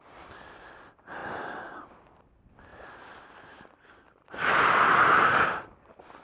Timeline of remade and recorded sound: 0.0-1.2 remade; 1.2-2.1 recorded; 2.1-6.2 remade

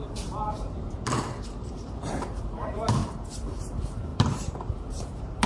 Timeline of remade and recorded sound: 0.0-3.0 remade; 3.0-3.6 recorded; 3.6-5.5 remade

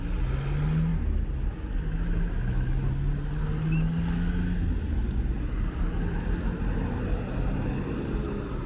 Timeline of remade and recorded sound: 0.0-8.7 recorded